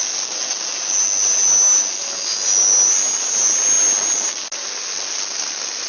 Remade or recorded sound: recorded